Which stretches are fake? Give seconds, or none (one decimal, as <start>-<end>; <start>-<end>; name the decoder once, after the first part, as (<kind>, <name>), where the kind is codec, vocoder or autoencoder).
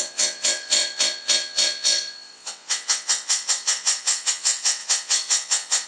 0.0-5.9 (vocoder, WaveNeXt)